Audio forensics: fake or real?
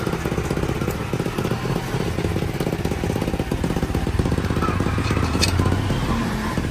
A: real